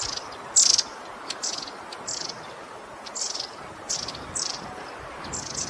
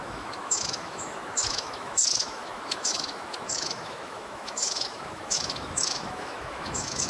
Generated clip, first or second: second